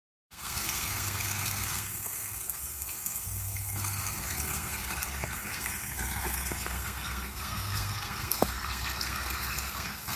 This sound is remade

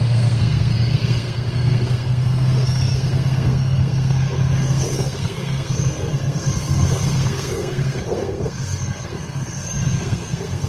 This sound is remade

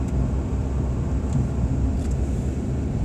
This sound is recorded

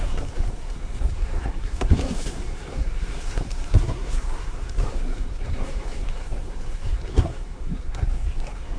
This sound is remade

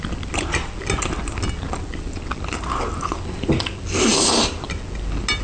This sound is recorded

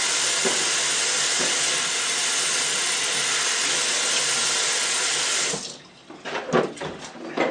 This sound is recorded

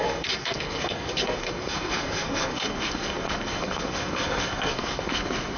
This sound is remade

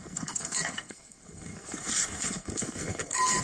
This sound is remade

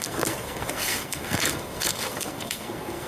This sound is remade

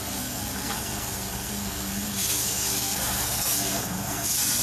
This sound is remade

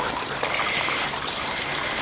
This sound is recorded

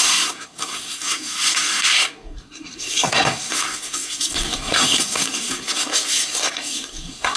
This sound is remade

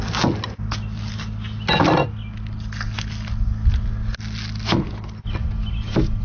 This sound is recorded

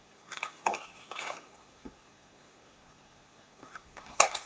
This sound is remade